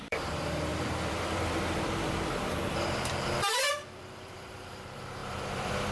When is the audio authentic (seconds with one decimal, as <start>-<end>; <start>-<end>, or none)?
none